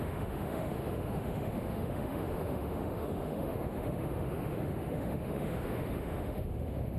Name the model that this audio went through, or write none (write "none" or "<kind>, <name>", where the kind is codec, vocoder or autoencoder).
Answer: autoencoder, DAC-VAE